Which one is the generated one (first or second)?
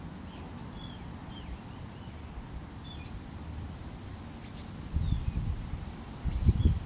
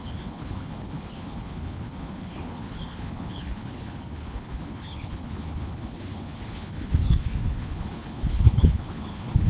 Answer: second